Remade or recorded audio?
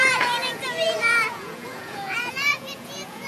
remade